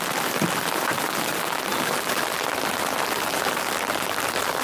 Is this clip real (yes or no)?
yes